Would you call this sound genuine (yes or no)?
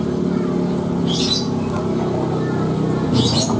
yes